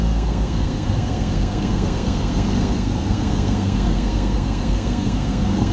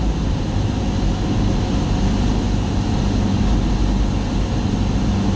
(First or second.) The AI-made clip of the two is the first